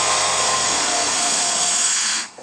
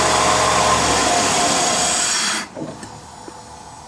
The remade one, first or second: first